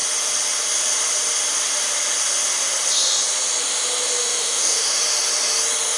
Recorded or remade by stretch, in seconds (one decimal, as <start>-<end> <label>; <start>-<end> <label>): 0.0-4.2 recorded; 4.2-5.0 remade; 5.0-6.0 recorded